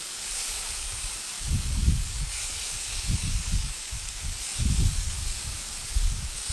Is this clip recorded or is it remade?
remade